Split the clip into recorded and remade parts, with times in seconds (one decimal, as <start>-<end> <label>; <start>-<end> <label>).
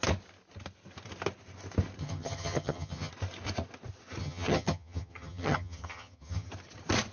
0.0-2.0 recorded; 2.0-3.1 remade; 3.1-4.2 recorded; 4.2-6.5 remade; 6.5-7.1 recorded